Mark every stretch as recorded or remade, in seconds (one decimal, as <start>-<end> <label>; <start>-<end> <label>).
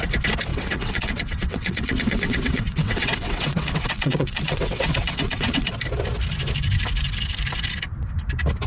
0.0-0.5 recorded; 0.5-5.7 remade; 5.7-8.7 recorded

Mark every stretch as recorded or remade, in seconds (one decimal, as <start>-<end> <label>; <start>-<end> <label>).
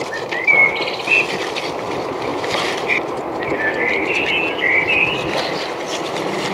0.0-6.5 recorded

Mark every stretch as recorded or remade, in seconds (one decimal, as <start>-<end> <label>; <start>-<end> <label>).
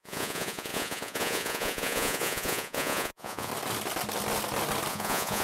0.0-3.5 remade; 3.5-4.9 recorded; 4.9-5.4 remade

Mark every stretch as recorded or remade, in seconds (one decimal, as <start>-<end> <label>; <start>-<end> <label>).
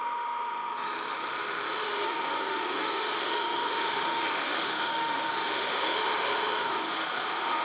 0.0-7.6 remade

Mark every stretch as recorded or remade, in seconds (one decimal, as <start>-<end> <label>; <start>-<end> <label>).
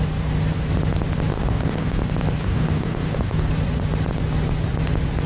0.0-1.3 recorded; 1.3-2.0 remade; 2.0-2.4 recorded; 2.4-3.5 remade; 3.5-5.3 recorded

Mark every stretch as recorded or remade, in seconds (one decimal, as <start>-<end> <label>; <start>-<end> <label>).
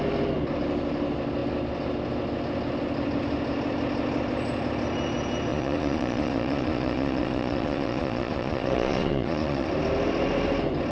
0.0-5.5 recorded; 5.5-9.7 remade; 9.7-10.9 recorded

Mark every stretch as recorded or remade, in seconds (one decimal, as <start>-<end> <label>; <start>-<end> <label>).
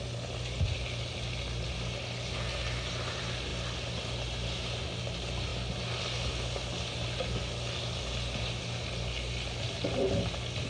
0.0-10.7 recorded